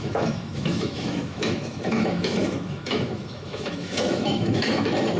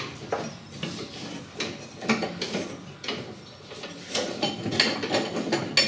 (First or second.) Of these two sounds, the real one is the second